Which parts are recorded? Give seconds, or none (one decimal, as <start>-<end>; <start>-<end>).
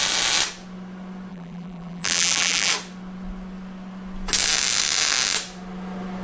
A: 0.0-1.3; 2.7-6.2